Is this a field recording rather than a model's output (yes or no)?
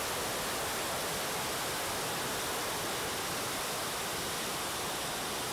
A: yes